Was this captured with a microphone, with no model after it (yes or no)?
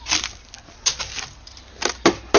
yes